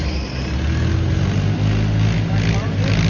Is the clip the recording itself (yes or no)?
yes